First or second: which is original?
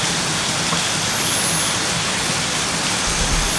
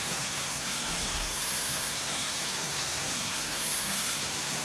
first